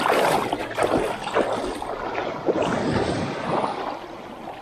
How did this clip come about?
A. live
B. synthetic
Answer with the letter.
A